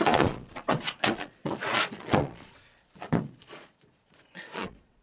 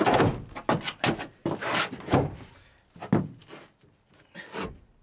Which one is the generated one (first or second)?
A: first